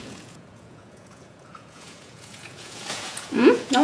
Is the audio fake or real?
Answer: fake